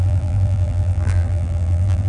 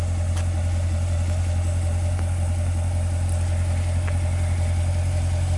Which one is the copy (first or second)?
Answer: first